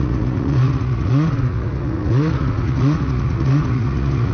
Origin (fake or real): fake